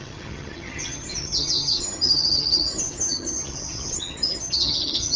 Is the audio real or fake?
fake